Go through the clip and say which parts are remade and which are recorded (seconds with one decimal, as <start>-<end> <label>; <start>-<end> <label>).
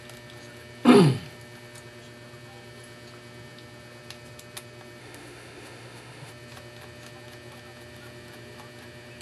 0.0-5.0 recorded; 5.0-6.3 remade; 6.3-9.2 recorded